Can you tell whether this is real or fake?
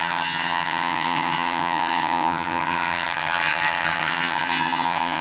fake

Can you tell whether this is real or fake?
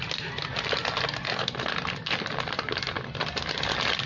real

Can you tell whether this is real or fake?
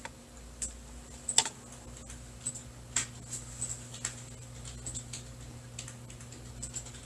real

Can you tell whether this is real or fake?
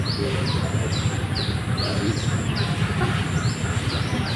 real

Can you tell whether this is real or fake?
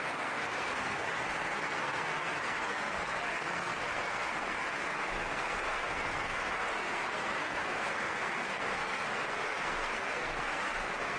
fake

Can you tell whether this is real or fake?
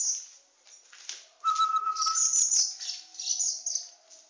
real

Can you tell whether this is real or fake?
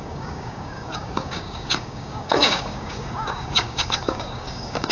fake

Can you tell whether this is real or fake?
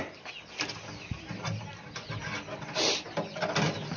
real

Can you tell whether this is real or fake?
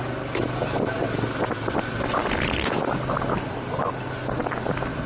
real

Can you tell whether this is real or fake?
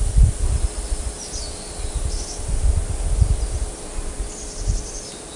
real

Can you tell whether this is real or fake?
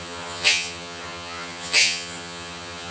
fake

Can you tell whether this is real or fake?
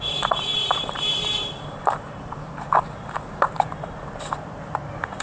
fake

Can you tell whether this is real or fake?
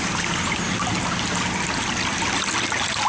real